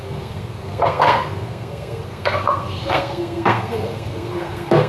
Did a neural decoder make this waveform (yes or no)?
yes